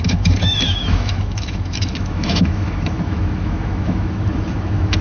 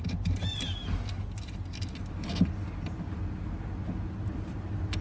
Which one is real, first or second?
second